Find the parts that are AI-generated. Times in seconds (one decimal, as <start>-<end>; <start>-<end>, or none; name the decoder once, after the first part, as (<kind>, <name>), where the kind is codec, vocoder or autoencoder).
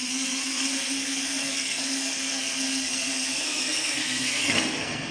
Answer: 0.0-5.1 (codec, SNAC)